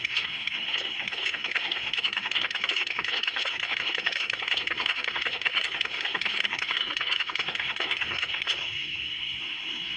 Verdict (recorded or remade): remade